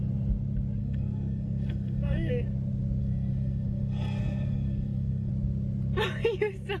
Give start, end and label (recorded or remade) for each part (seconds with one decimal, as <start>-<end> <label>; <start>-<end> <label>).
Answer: 0.0-0.8 recorded; 0.8-2.3 remade; 2.3-3.0 recorded; 3.0-5.3 remade; 5.3-6.8 recorded